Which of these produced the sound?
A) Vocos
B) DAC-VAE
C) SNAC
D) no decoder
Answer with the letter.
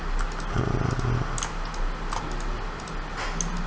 D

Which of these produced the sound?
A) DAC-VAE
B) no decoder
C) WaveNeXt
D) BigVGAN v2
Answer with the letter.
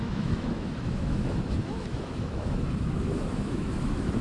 A